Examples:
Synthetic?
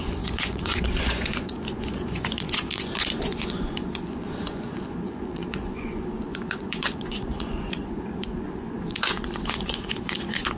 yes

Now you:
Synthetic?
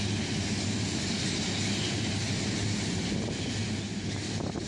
no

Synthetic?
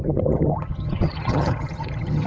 yes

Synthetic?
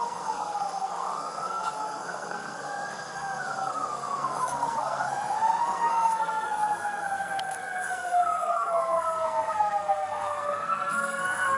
yes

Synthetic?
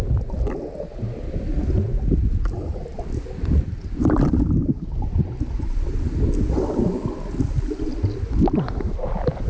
no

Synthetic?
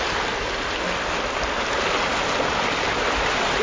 no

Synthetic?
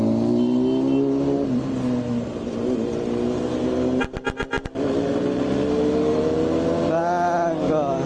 no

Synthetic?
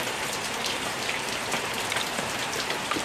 yes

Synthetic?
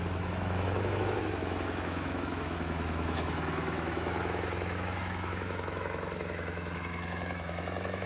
yes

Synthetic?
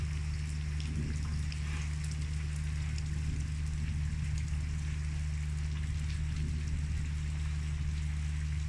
no